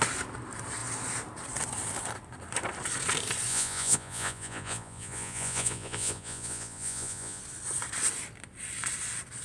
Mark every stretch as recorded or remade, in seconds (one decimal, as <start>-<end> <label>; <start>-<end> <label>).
0.0-3.5 recorded; 3.5-7.4 remade; 7.4-9.4 recorded